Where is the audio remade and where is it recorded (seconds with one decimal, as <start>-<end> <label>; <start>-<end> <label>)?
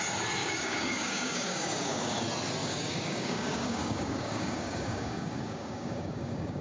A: 0.0-0.4 recorded; 0.4-2.2 remade; 2.2-2.6 recorded; 2.6-6.6 remade